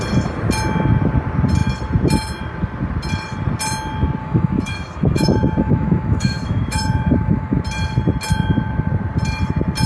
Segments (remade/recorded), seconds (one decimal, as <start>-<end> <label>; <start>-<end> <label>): 0.0-4.2 recorded; 4.2-7.6 remade; 7.6-9.9 recorded